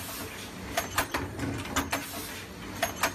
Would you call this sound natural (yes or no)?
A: yes